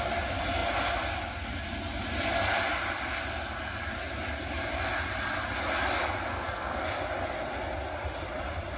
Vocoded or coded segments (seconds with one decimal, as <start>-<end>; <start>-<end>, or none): 6.3-6.8